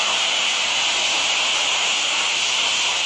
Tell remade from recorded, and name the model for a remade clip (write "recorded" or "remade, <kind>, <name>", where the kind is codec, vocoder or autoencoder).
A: recorded